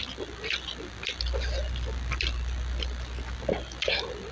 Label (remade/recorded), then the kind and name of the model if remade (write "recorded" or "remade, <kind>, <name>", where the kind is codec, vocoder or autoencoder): recorded